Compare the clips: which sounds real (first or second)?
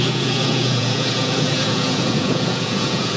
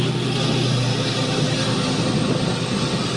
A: second